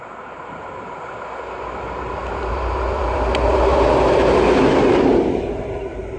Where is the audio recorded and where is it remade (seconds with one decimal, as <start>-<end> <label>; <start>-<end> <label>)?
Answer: 0.0-6.2 recorded